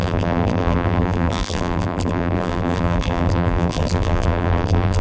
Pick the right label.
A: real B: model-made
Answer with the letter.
B